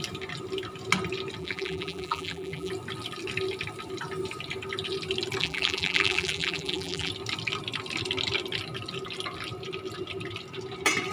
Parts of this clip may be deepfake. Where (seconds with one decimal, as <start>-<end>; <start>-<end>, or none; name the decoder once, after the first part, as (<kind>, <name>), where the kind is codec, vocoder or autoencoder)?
1.4-2.7 (vocoder, BigVGAN v2); 5.4-7.1